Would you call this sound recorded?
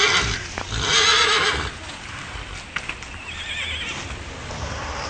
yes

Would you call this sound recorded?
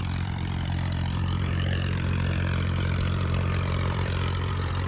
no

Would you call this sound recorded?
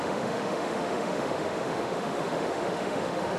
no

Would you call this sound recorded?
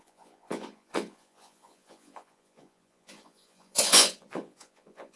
no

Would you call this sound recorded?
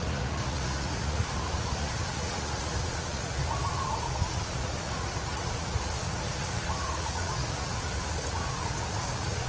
no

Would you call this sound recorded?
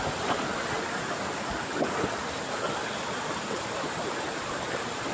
yes